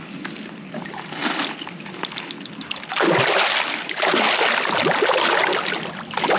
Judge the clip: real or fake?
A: real